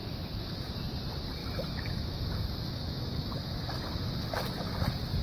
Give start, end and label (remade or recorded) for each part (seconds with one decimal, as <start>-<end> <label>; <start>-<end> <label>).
0.0-0.9 remade; 0.9-1.4 recorded; 1.4-4.5 remade; 4.5-5.2 recorded